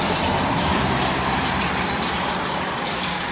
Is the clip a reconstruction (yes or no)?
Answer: yes